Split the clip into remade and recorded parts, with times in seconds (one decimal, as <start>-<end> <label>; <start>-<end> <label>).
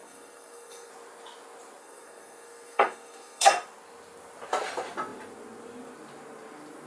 0.0-0.9 remade; 0.9-1.8 recorded; 1.8-3.5 remade; 3.5-6.9 recorded